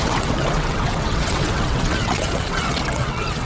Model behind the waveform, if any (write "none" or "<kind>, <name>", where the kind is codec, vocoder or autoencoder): vocoder, WaveNeXt